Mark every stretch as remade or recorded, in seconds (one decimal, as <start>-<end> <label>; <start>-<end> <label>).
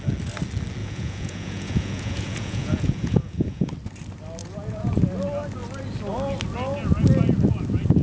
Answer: 0.0-0.8 recorded; 0.8-3.7 remade; 3.7-4.4 recorded; 4.4-5.0 remade; 5.0-8.0 recorded